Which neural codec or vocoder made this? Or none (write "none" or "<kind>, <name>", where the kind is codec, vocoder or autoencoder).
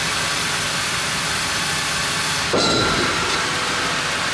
none